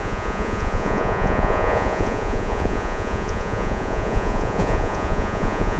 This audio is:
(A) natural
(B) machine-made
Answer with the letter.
B